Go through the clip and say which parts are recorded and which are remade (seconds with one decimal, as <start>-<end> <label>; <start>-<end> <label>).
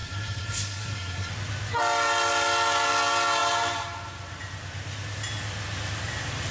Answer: 0.0-1.3 remade; 1.3-6.5 recorded